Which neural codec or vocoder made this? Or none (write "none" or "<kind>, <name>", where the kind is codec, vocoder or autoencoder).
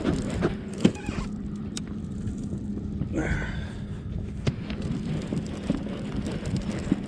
vocoder, BigVGAN v2